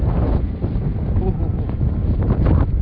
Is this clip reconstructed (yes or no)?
no